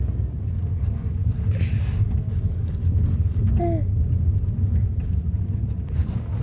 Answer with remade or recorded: recorded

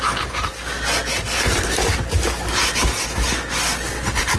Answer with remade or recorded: recorded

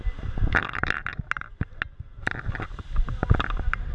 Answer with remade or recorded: recorded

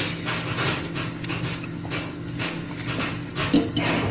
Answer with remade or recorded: recorded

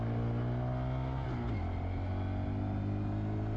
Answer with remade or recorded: recorded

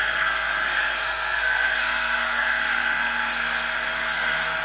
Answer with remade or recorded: remade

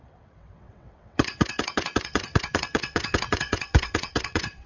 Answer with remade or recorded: remade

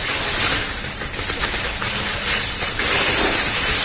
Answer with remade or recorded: recorded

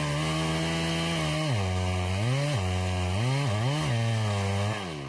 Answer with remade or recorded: recorded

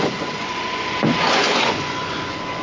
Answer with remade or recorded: remade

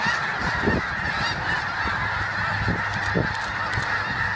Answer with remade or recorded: recorded